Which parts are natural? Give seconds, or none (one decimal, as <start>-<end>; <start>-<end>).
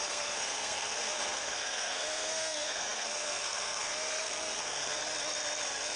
5.0-6.0